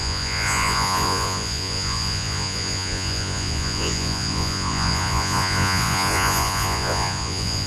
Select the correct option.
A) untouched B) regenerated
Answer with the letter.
B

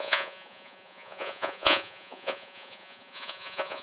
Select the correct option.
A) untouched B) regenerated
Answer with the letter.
B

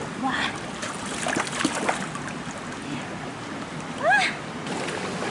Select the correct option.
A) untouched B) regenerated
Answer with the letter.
A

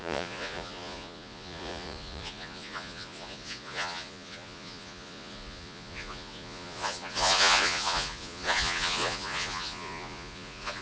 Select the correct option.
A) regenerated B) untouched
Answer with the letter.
A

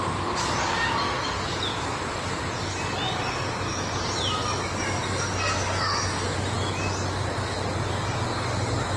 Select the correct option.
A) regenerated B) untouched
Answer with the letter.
B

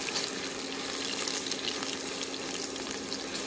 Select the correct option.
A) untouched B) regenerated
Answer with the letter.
A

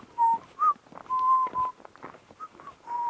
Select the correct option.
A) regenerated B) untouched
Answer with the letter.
B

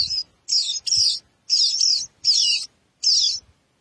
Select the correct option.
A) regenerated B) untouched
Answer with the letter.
B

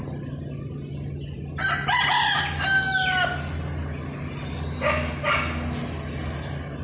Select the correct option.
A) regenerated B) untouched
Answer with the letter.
B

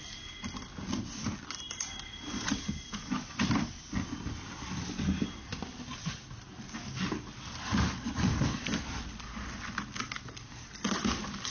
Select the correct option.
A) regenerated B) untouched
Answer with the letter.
B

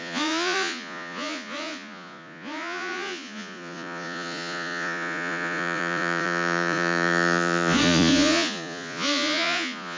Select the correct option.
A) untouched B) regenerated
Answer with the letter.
B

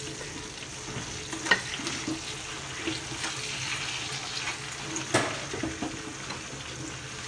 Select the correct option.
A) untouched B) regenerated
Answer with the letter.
A